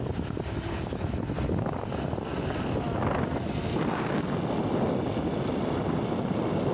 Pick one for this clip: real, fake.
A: real